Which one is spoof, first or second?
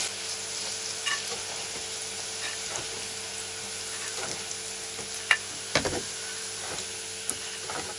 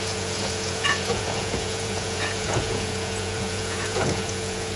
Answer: second